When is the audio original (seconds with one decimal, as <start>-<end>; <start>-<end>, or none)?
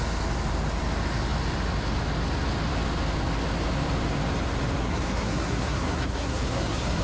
0.0-4.8